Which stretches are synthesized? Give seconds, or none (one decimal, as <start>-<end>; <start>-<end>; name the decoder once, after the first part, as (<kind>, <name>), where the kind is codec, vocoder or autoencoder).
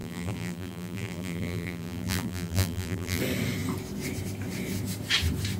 0.0-3.2 (vocoder, BigVGAN v2)